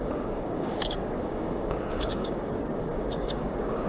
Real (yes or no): no